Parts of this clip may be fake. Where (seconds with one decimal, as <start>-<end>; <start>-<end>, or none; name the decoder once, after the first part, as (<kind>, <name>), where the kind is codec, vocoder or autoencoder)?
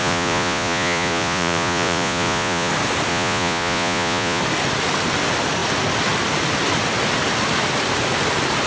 0.0-2.7 (vocoder, Vocos); 3.1-4.4